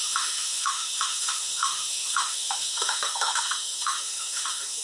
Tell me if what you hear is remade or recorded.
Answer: remade